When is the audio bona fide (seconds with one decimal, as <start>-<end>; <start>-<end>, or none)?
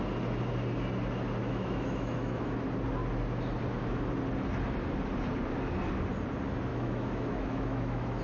0.0-1.4; 2.6-6.7